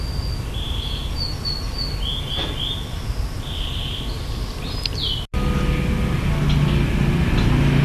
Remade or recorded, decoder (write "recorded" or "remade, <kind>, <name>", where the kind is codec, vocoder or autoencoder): recorded